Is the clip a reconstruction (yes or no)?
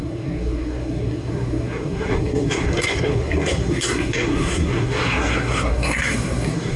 yes